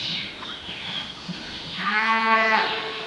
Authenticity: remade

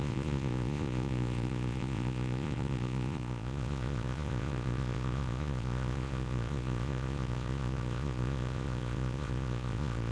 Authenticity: remade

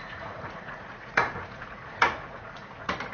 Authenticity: remade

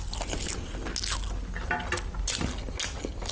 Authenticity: recorded